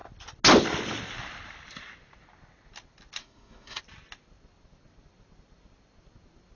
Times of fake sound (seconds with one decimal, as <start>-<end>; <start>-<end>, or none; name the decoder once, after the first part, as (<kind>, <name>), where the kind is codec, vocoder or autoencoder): 3.2-3.8 (codec, SNAC)